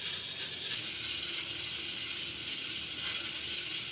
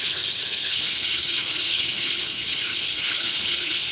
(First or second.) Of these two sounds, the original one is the first